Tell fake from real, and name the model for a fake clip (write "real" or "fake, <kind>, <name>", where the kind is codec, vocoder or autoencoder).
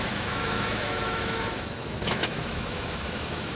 fake, autoencoder, DAC-VAE